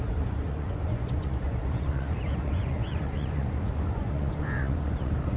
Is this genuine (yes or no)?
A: no